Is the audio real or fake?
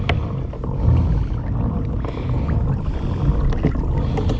real